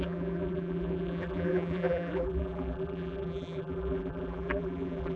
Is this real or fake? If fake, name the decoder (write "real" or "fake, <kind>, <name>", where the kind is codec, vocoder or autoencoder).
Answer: fake, vocoder, BigVGAN v2